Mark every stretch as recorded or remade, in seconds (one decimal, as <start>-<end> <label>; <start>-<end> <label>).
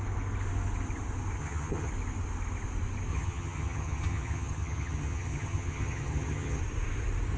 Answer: 0.0-1.4 recorded; 1.4-1.9 remade; 1.9-3.1 recorded; 3.1-6.6 remade; 6.6-7.4 recorded